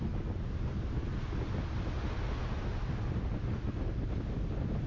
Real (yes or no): yes